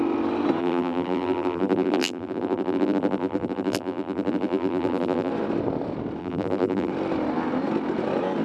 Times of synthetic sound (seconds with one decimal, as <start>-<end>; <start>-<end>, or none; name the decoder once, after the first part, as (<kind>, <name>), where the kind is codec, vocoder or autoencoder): 0.6-5.3 (vocoder, BigVGAN v2); 6.2-6.9